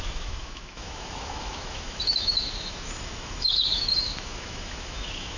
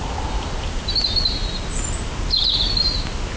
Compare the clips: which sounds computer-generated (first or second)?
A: first